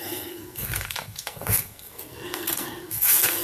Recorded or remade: remade